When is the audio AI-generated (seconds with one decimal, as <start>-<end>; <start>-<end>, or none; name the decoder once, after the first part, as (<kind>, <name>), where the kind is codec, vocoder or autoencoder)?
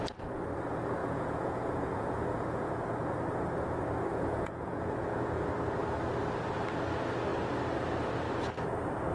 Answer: 1.0-2.7 (vocoder, Vocos); 4.1-5.5